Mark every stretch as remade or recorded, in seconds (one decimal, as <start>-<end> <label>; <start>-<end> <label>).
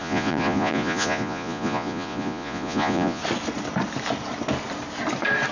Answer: 0.0-3.2 remade; 3.2-5.5 recorded